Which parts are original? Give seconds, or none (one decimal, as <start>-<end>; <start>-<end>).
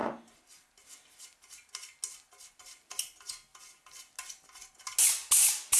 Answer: 0.0-5.8